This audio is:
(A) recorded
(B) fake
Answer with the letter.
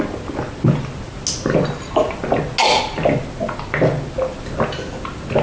A